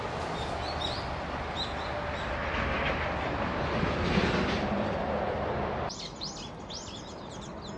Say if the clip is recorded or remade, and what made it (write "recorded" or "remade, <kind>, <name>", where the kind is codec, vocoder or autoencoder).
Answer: recorded